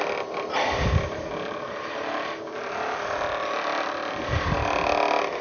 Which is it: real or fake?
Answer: real